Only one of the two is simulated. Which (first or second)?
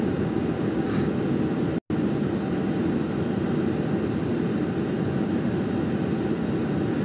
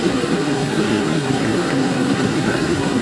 second